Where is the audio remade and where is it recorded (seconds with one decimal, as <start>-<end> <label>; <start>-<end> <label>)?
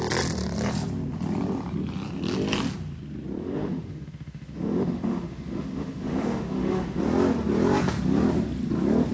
0.0-3.4 recorded; 3.4-7.0 remade; 7.0-9.1 recorded